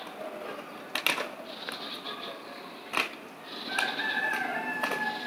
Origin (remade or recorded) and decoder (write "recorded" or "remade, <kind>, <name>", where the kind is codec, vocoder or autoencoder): recorded